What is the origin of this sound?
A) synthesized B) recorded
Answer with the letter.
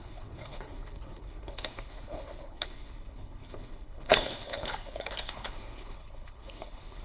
A